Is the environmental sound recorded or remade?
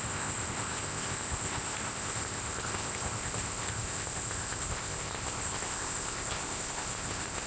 remade